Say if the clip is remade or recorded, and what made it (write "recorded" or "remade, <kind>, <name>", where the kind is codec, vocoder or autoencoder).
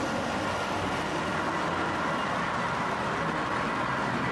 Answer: recorded